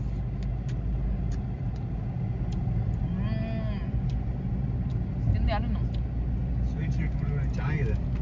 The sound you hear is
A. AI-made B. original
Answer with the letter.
B